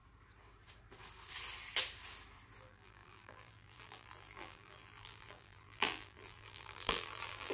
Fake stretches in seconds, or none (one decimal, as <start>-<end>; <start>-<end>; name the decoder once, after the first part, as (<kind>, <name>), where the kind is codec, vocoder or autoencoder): 2.6-7.5 (vocoder, BigVGAN v2)